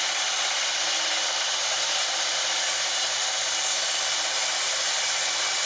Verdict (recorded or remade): recorded